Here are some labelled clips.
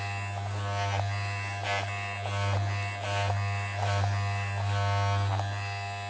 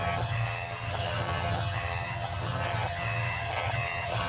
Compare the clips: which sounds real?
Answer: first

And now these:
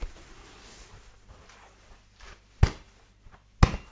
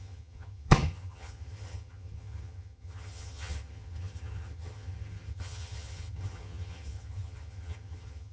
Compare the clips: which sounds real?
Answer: first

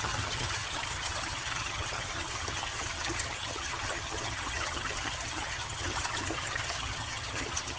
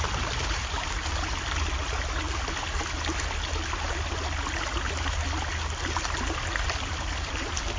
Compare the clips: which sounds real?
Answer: second